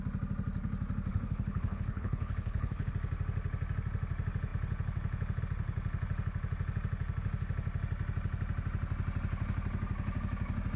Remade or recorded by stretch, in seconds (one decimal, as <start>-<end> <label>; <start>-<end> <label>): 0.0-1.1 recorded; 1.1-2.9 remade; 2.9-10.8 recorded